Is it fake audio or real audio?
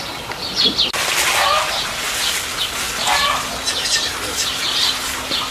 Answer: real